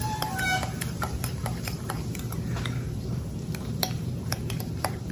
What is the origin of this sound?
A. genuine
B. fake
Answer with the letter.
B